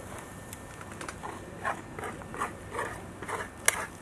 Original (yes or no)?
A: yes